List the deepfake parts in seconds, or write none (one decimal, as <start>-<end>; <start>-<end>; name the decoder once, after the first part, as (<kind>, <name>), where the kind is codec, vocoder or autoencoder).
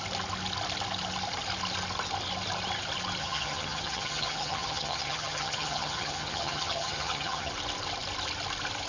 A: 3.2-7.5 (vocoder, HiFi-GAN)